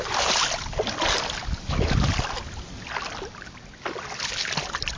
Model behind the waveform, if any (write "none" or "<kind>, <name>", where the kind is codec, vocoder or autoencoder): none